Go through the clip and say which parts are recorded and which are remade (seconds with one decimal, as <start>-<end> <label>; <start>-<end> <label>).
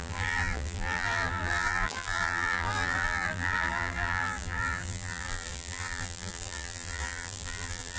0.0-8.0 remade